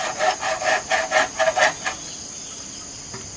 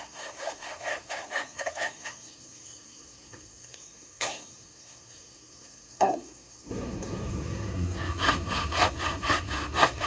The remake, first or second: second